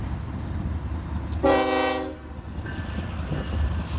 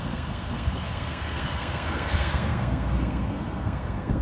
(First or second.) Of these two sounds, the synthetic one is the second